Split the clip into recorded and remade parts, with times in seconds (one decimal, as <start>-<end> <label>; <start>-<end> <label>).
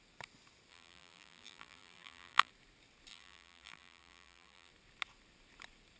0.0-0.7 recorded; 0.7-2.5 remade; 2.5-3.1 recorded; 3.1-4.7 remade; 4.7-6.0 recorded